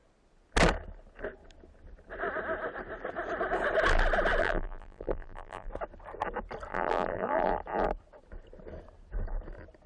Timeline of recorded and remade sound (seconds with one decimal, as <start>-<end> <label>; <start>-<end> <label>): 0.0-4.4 recorded; 4.4-5.7 remade; 5.7-6.7 recorded; 6.7-7.5 remade; 7.5-9.9 recorded